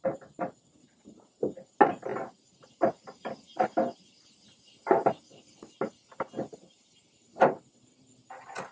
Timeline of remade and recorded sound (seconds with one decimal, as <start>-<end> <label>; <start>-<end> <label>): 0.0-7.0 recorded; 7.0-7.6 remade; 7.6-8.7 recorded